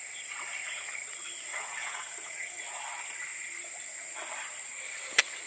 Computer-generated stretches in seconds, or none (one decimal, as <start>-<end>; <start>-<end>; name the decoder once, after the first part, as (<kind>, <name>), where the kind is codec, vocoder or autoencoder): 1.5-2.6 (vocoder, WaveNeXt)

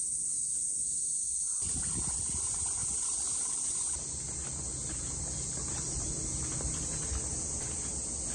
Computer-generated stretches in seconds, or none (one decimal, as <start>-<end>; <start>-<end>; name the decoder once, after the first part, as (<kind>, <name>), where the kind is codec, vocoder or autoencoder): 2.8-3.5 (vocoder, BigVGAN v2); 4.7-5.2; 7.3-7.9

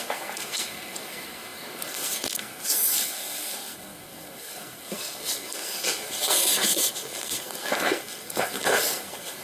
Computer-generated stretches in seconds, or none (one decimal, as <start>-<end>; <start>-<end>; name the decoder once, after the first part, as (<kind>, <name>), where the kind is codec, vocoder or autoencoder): 0.0-9.4 (codec, SNAC)

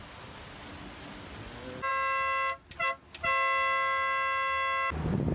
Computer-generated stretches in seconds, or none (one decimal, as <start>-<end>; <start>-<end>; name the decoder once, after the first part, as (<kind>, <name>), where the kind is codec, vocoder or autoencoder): none